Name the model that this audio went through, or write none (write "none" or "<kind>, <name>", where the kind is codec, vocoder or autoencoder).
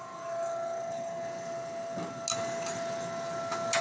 none